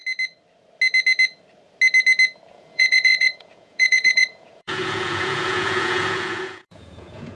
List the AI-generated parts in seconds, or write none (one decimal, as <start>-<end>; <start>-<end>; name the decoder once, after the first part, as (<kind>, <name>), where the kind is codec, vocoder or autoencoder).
2.5-7.3 (vocoder, Vocos)

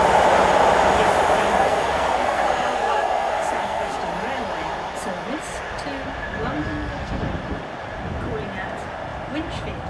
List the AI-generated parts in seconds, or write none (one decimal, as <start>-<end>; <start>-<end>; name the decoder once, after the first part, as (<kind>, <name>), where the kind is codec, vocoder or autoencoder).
1.5-4.0 (codec, SNAC); 6.6-7.2

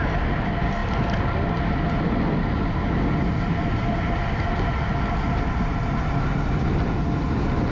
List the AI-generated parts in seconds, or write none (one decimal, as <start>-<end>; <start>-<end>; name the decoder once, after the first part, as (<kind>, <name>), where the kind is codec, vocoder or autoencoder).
none

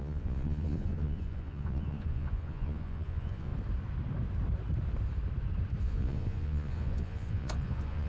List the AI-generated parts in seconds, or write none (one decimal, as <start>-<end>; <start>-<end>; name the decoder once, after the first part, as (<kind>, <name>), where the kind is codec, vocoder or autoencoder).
0.0-3.5 (vocoder, Vocos); 5.8-8.1

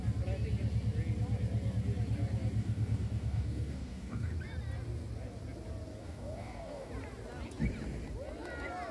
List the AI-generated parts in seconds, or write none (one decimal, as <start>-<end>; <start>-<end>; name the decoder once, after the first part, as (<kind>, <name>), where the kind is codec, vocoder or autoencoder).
2.6-4.3 (codec, DAC); 6.0-6.9

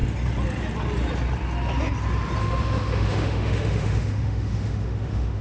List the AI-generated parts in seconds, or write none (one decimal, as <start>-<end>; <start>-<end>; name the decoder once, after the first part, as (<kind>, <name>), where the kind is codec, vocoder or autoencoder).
2.4-5.4 (autoencoder, DAC-VAE)